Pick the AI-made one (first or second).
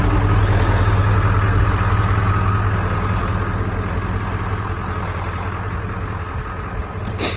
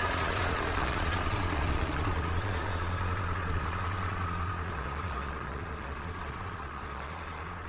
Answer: second